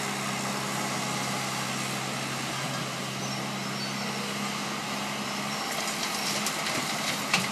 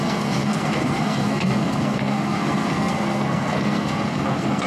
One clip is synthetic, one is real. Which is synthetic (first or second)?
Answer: second